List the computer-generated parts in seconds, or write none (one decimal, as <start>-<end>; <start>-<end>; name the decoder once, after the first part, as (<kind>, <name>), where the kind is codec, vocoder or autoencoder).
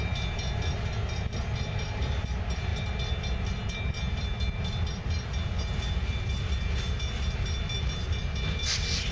none